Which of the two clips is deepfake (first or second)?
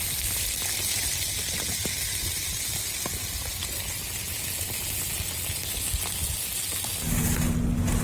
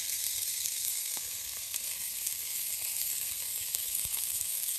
second